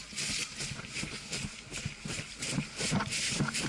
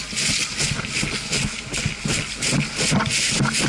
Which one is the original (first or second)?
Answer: second